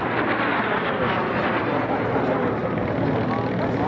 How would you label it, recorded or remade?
recorded